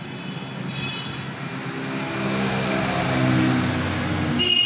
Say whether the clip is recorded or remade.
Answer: recorded